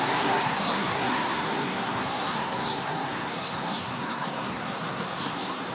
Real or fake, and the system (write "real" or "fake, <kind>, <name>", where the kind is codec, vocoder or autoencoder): fake, codec, SNAC